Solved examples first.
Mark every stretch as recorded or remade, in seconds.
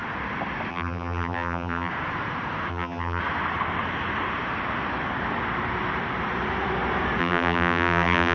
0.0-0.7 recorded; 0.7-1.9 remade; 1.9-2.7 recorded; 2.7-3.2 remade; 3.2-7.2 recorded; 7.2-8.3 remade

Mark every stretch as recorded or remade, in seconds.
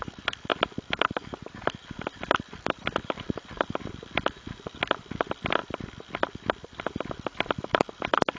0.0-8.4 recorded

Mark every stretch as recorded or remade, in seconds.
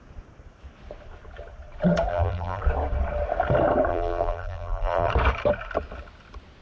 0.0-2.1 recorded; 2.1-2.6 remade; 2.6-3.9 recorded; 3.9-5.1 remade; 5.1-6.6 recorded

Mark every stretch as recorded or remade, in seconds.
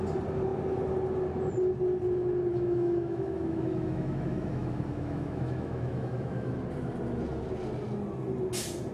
0.0-2.5 recorded; 2.5-6.5 remade; 6.5-8.9 recorded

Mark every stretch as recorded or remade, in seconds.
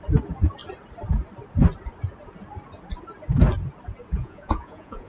0.0-4.1 recorded; 4.1-5.1 remade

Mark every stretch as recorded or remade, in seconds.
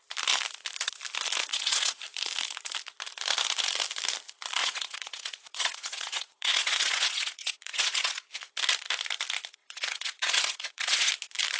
0.0-1.5 recorded; 1.5-2.0 remade; 2.0-4.6 recorded; 4.6-8.2 remade; 8.2-9.6 recorded; 9.6-11.1 remade; 11.1-11.6 recorded